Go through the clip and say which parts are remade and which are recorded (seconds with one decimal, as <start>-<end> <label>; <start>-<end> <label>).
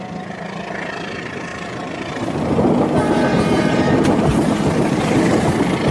0.0-1.5 recorded; 1.5-5.0 remade; 5.0-5.9 recorded